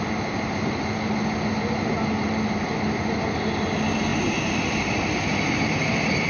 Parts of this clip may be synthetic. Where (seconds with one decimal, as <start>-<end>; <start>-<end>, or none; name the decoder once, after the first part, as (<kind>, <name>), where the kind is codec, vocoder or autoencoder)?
4.1-5.1 (vocoder, BigVGAN v2)